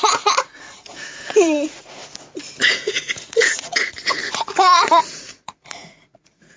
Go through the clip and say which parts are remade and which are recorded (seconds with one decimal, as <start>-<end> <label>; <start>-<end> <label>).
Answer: 0.0-2.0 remade; 2.0-2.7 recorded; 2.7-6.6 remade